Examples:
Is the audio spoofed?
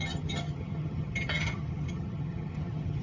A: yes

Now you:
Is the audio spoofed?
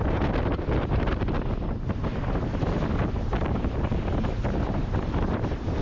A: no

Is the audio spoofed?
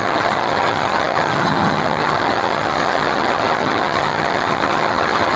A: yes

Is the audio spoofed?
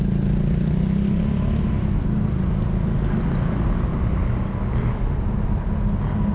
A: no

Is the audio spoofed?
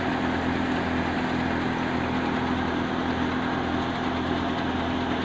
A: no